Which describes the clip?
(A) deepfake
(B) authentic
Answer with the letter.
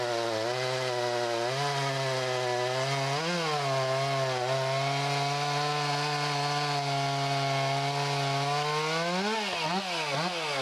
B